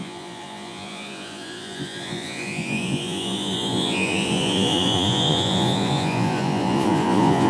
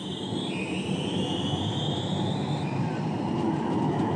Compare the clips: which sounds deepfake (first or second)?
first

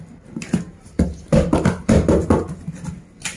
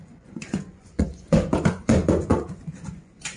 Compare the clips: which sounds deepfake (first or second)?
second